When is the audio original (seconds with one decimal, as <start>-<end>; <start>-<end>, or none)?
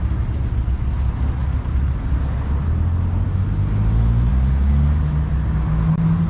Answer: 0.0-6.3